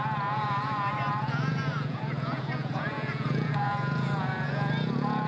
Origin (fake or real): fake